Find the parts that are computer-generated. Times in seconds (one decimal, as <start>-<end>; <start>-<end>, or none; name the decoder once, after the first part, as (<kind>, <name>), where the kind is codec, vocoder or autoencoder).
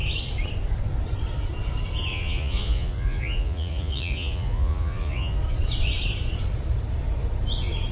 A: 2.1-5.4 (vocoder, Vocos)